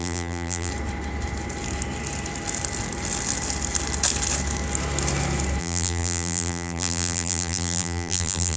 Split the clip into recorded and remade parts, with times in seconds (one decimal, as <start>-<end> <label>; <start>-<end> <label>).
0.0-0.7 remade; 0.7-5.6 recorded; 5.6-8.6 remade